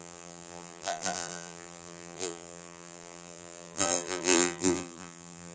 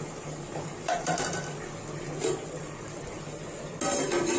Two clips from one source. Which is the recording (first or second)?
second